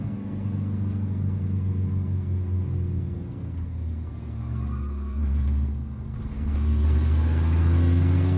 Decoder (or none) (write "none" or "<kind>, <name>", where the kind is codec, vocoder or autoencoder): codec, SNAC